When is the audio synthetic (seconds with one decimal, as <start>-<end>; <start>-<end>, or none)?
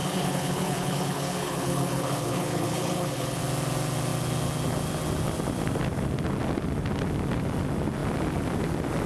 0.0-3.4